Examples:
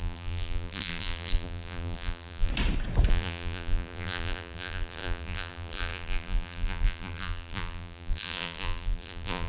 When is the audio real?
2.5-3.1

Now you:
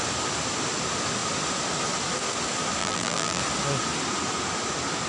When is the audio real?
0.0-2.8; 3.4-5.1

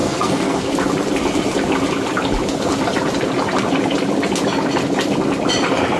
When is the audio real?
0.7-6.0

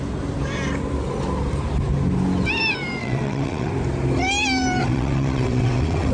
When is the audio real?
0.0-3.0; 3.7-4.8

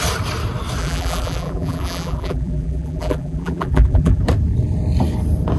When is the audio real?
0.0-0.8; 4.2-5.6

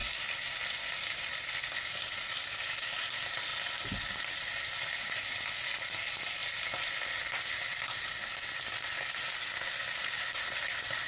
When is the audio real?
0.0-11.1

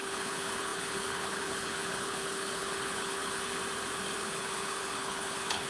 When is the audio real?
3.6-4.2

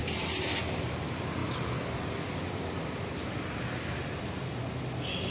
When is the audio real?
0.5-1.4; 4.6-5.3